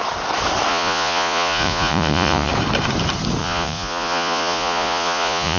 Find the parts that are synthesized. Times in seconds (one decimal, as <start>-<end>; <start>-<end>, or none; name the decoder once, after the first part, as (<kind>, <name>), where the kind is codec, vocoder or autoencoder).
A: 0.7-2.5 (vocoder, Vocos); 3.4-5.6